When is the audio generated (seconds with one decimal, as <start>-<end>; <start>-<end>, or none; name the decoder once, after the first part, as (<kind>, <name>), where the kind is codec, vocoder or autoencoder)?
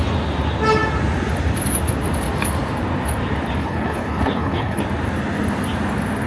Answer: 3.6-4.8 (codec, HILCodec)